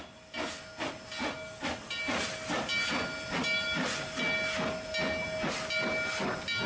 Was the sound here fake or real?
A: real